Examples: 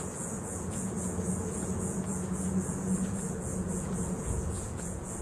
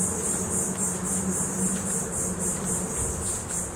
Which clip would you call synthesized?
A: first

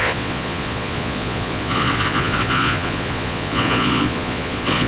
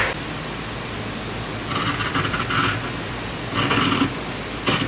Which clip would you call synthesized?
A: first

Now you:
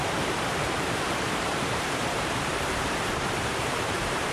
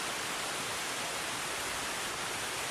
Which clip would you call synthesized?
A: first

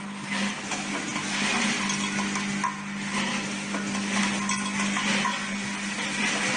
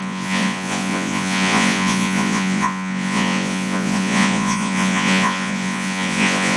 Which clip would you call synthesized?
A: second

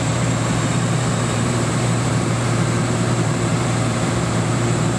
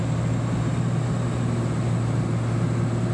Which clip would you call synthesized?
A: first